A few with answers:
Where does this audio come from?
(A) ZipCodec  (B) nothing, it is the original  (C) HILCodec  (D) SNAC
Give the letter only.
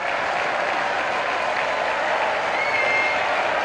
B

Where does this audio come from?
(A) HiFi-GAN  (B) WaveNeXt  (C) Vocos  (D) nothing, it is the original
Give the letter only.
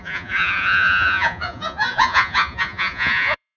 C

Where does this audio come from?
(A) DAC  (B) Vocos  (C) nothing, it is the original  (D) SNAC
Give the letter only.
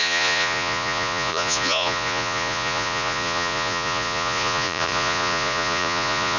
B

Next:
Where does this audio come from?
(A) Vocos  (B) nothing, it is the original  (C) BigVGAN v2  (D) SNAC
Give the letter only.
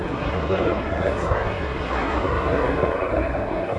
D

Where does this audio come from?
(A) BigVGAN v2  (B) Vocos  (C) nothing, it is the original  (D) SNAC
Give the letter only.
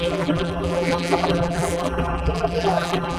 A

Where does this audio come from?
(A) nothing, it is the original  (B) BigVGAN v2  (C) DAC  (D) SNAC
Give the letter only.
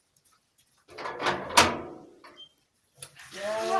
A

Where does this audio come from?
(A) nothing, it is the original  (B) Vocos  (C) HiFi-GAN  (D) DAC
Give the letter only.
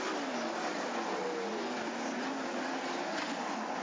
A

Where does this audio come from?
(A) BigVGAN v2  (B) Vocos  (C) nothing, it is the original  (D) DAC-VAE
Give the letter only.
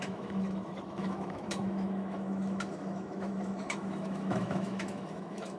D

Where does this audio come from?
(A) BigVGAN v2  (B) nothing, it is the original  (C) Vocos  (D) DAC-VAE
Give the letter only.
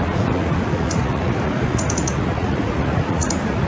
C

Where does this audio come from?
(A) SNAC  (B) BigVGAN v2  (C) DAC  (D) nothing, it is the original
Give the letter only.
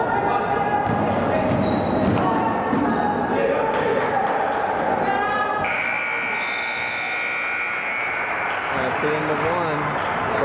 D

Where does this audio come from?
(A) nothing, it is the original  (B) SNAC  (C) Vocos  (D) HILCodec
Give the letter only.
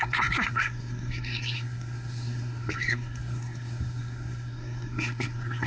B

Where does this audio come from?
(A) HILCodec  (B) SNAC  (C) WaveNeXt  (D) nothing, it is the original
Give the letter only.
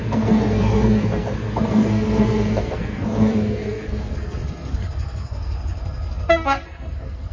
B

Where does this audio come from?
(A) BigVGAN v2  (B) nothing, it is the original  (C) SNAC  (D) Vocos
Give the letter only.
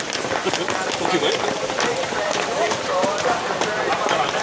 A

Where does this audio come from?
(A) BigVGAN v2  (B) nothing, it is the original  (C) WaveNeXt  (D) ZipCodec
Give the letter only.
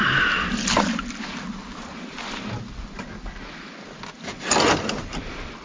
B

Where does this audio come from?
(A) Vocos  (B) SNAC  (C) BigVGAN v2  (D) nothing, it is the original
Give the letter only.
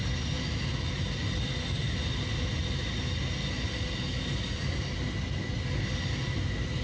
D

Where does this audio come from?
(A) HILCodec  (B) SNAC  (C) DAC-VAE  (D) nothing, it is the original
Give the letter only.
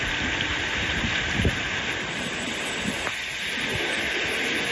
D